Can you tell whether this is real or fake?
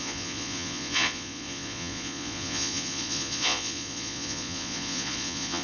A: fake